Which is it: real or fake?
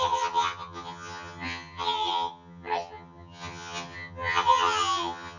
fake